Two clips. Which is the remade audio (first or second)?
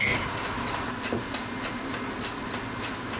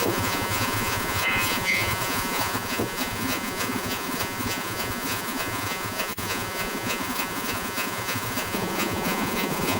second